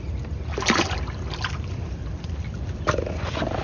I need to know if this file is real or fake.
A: fake